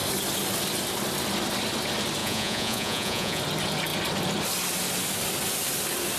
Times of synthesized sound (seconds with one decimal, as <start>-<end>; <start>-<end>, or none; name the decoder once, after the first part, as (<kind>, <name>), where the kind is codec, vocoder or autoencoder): 2.2-3.4 (vocoder, Vocos)

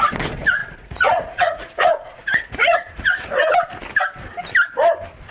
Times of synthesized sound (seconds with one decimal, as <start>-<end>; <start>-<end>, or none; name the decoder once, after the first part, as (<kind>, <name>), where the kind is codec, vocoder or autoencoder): 0.6-3.8 (vocoder, Vocos)

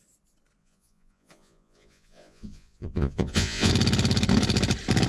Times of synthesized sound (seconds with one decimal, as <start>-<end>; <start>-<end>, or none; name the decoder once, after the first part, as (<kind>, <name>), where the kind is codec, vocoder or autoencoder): 0.6-3.7 (vocoder, Vocos)

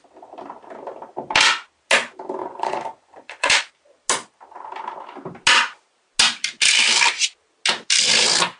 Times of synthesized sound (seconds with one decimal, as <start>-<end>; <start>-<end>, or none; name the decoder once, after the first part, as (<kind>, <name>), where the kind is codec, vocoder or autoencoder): 2.4-3.6 (vocoder, Vocos)

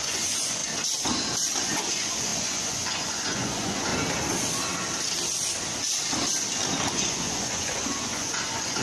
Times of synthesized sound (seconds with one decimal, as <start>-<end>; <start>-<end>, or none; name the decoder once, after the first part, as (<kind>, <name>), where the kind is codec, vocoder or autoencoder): 0.0-0.6 (vocoder, Vocos); 1.6-3.9; 6.9-8.8

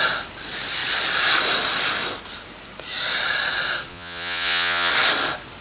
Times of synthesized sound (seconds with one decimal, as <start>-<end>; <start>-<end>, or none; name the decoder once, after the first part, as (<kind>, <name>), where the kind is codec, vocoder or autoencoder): 3.9-4.9 (vocoder, Vocos)

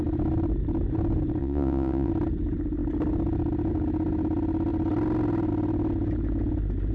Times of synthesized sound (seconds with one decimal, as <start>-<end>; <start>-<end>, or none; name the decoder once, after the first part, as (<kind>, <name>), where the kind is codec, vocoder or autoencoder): 1.4-2.1 (vocoder, Vocos)